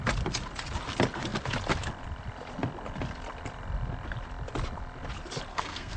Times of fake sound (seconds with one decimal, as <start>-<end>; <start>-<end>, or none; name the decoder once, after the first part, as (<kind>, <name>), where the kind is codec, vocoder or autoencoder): 5.5-6.0 (codec, SNAC)